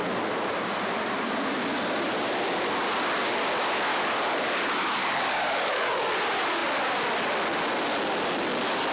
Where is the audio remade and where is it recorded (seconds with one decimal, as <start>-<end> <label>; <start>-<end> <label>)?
0.0-3.9 recorded; 3.9-4.5 remade; 4.5-5.0 recorded; 5.0-6.1 remade; 6.1-8.9 recorded